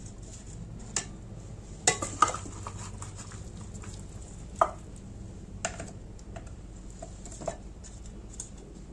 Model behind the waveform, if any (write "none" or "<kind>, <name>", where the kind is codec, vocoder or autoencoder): none